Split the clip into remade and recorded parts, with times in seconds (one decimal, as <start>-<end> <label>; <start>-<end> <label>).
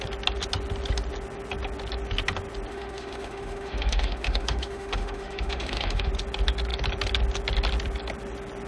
0.0-2.7 recorded; 2.7-6.1 remade; 6.1-8.7 recorded